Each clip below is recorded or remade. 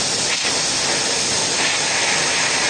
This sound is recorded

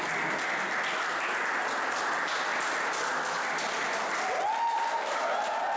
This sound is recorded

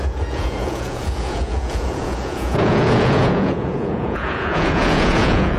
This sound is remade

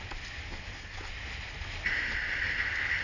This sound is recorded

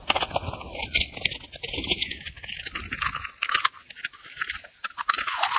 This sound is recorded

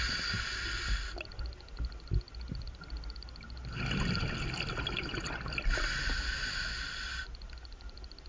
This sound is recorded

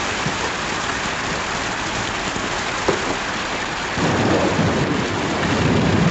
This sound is recorded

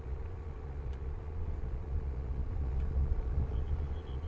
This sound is remade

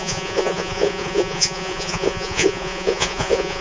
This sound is remade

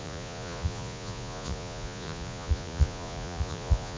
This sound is remade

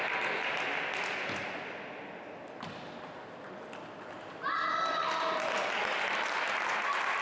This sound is recorded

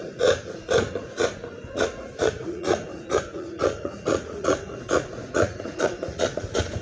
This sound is remade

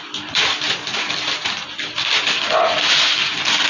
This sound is recorded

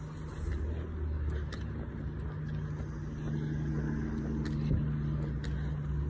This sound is recorded